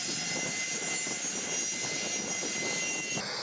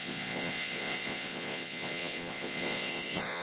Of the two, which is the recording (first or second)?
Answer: first